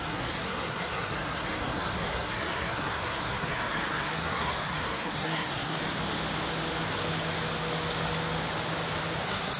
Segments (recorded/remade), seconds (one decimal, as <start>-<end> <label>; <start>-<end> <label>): 0.0-5.8 remade; 5.8-9.2 recorded; 9.2-9.6 remade